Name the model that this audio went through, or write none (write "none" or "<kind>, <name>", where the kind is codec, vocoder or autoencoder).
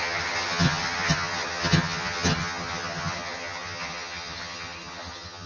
vocoder, HiFi-GAN